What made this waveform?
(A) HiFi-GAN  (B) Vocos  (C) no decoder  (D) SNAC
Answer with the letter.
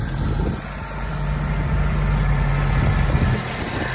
C